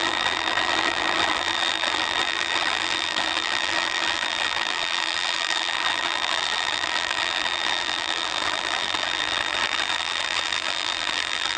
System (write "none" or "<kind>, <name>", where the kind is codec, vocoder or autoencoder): vocoder, BigVGAN v2